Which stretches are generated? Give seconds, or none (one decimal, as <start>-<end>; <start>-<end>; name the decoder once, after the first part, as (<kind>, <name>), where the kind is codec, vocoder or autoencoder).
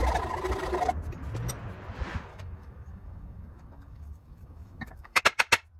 2.3-5.2 (codec, DAC)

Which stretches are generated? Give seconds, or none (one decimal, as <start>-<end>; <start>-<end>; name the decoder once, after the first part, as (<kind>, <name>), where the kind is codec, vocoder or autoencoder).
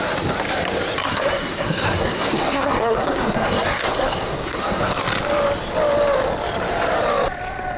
1.0-5.0 (codec, SNAC)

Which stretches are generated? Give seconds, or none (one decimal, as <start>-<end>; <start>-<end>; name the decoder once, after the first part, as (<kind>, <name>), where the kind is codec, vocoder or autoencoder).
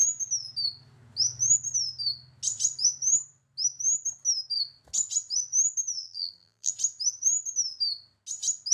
6.0-6.7 (vocoder, BigVGAN v2)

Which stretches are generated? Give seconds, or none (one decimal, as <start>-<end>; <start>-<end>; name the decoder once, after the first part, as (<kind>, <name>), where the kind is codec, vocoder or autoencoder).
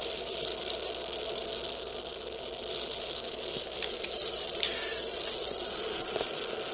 none